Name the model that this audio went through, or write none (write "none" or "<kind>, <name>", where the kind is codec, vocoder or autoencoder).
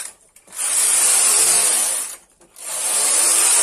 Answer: vocoder, BigVGAN v2